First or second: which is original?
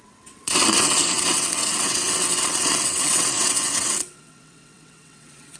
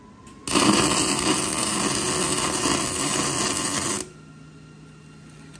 second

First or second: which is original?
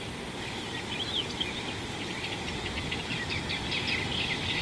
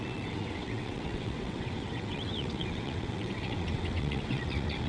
first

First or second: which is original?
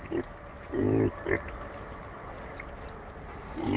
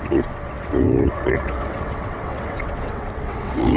first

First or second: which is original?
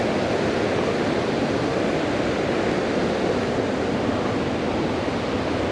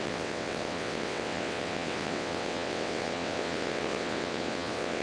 first